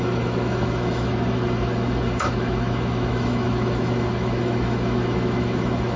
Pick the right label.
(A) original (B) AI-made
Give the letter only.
B